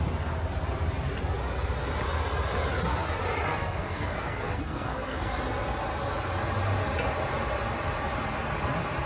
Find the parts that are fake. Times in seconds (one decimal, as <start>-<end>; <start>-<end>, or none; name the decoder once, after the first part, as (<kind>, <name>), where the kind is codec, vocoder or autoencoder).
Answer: 3.5-5.4 (codec, SNAC)